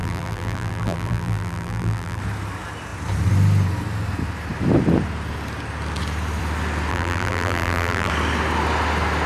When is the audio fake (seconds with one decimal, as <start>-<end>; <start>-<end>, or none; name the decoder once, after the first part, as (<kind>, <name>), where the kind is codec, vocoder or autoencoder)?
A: 0.0-2.2 (vocoder, BigVGAN v2); 6.9-8.1